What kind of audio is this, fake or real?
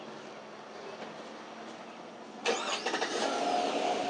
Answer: real